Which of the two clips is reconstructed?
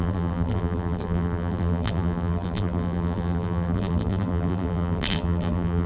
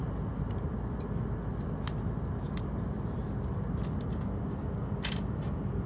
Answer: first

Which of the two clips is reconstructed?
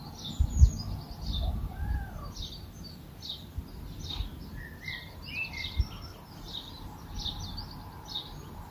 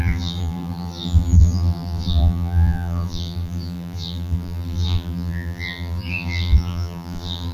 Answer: second